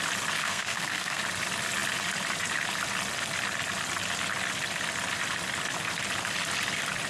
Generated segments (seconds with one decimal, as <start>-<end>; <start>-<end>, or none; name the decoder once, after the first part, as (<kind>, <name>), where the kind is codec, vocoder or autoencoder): 0.4-1.2 (codec, SNAC)